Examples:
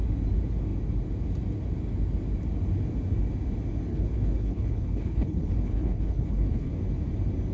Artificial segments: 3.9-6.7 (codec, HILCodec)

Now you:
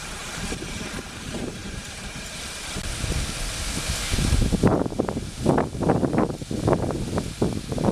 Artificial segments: none

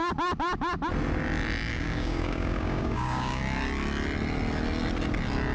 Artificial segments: 1.7-3.4 (codec, DAC)

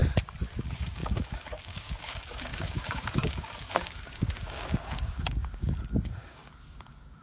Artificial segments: 0.6-7.2 (codec, DAC)

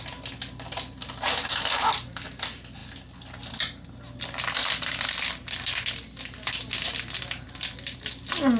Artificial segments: 2.8-3.5 (vocoder, BigVGAN v2); 4.6-8.1